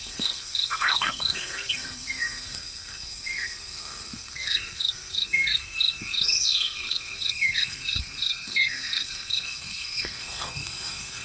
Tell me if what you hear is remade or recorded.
remade